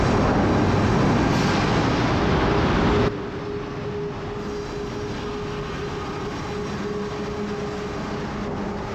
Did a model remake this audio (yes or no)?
no